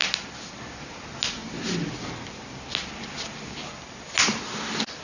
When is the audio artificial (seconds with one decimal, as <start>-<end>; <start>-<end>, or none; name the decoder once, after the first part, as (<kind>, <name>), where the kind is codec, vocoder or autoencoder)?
none